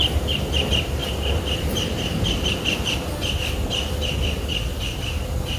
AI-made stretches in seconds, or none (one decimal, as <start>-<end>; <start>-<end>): none